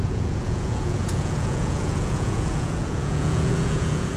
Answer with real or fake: fake